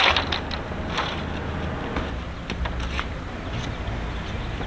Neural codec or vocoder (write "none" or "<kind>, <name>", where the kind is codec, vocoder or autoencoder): none